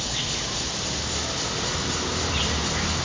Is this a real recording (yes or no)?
yes